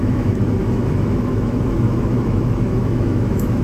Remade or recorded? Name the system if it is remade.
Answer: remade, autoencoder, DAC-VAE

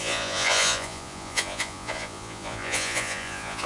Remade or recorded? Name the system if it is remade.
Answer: remade, vocoder, Vocos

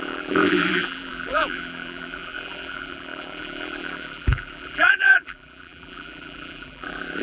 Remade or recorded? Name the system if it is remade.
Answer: remade, vocoder, BigVGAN v2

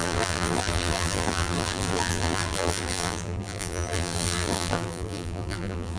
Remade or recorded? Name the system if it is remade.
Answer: remade, vocoder, BigVGAN v2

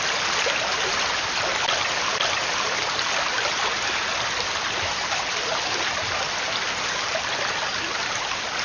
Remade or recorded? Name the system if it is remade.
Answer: recorded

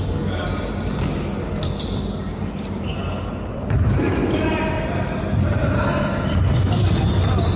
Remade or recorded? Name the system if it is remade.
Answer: recorded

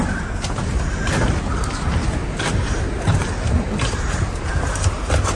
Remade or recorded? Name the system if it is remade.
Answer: remade, vocoder, BigVGAN v2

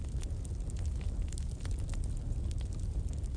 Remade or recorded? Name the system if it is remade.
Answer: recorded